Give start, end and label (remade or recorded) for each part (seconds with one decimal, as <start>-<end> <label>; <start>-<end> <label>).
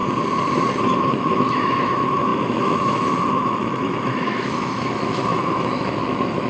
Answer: 0.0-0.8 recorded; 0.8-6.5 remade